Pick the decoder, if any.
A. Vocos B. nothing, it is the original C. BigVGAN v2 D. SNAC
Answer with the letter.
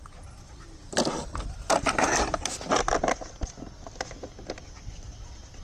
B